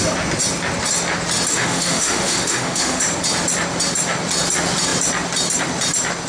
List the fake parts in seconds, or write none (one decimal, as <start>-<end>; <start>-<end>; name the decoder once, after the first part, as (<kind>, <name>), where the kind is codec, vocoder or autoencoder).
1.5-3.0 (autoencoder, DAC-VAE)